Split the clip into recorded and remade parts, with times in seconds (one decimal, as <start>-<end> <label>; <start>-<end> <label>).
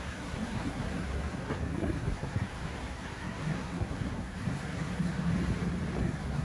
0.0-5.3 remade; 5.3-6.0 recorded; 6.0-6.4 remade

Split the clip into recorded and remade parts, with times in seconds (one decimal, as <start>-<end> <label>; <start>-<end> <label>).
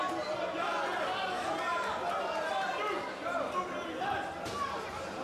0.0-5.2 recorded